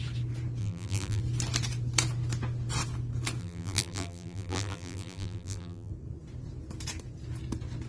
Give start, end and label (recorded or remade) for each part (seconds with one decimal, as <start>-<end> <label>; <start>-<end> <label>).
0.0-0.6 recorded; 0.6-1.2 remade; 1.2-3.4 recorded; 3.4-5.9 remade; 5.9-7.9 recorded